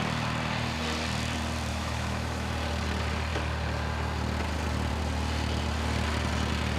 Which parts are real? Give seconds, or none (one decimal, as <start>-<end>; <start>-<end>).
0.0-1.7; 2.5-6.8